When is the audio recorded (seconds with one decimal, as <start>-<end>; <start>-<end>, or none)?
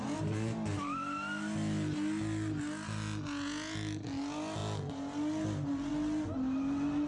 0.0-7.1